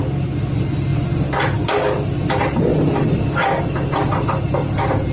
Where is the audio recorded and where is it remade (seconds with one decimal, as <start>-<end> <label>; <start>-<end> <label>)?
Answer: 0.0-5.1 recorded